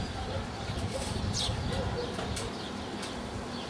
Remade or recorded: recorded